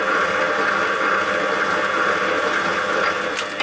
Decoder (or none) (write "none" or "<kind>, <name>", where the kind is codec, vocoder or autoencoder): none